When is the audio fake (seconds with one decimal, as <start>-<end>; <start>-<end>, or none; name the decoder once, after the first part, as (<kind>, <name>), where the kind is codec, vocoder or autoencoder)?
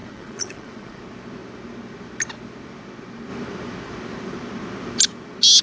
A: 0.0-1.0 (vocoder, Vocos)